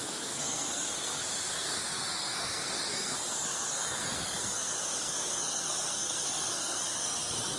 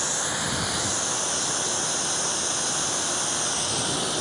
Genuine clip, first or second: second